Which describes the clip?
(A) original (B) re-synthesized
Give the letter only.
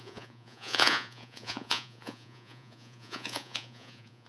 B